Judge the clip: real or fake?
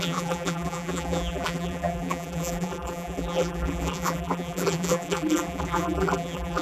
fake